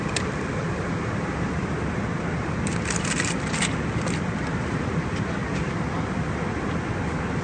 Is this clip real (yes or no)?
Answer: yes